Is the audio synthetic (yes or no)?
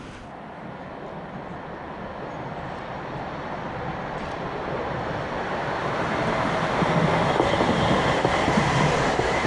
no